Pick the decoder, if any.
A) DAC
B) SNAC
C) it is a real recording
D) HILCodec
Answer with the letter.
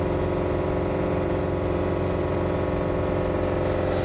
C